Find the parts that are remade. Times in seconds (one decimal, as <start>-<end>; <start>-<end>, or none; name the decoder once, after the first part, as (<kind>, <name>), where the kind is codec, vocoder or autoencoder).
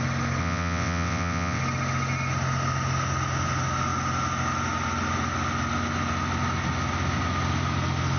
0.4-1.6 (vocoder, WaveNeXt)